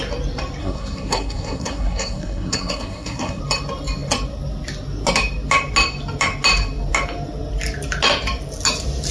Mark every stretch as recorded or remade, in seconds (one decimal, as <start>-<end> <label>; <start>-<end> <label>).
0.0-0.6 recorded; 0.6-3.4 remade; 3.4-9.1 recorded